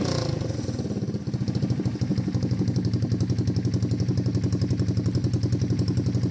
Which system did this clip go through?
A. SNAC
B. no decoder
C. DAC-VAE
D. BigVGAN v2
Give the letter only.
B